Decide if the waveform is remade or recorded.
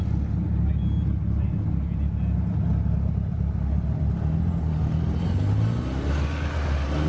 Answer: recorded